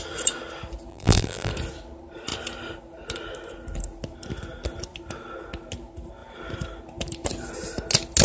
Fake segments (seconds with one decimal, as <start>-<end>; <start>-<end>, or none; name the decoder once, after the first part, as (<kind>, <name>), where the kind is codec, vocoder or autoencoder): 0.9-1.5 (vocoder, BigVGAN v2)